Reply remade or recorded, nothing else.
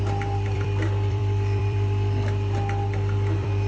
remade